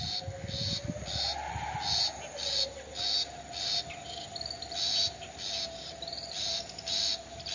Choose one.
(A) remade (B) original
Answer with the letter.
B